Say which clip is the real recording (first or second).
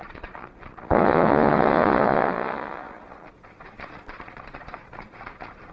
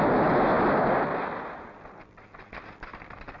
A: second